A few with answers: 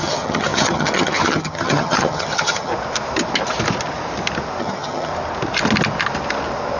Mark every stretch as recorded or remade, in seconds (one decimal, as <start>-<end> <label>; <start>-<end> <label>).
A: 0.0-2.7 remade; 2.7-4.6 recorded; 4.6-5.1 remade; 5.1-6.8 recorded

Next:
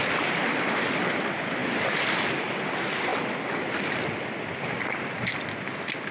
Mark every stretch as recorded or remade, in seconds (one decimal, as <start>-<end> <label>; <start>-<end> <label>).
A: 0.0-6.1 recorded

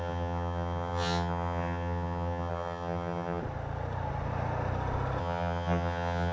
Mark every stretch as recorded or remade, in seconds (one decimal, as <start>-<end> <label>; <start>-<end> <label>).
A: 0.0-3.4 remade; 3.4-5.2 recorded; 5.2-6.3 remade